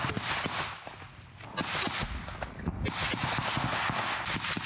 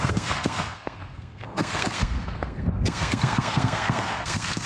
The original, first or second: first